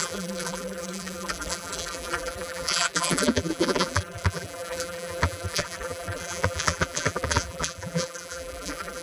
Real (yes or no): no